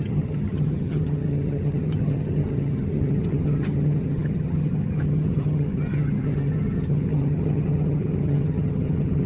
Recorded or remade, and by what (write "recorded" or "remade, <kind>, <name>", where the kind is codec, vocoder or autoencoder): remade, vocoder, HiFi-GAN